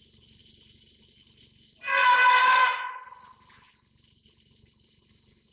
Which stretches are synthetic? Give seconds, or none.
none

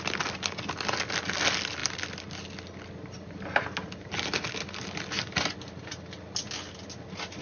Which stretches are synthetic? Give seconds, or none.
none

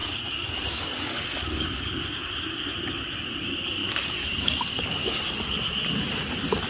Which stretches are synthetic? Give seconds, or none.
0.0-2.0 (codec, DAC); 3.8-5.2

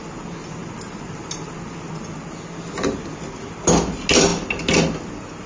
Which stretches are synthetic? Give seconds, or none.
none

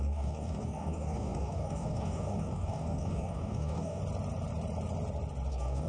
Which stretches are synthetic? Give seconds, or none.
0.0-4.0 (codec, DAC); 5.5-5.9

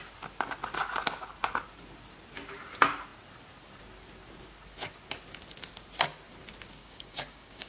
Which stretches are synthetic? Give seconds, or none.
6.8-7.7 (codec, DAC)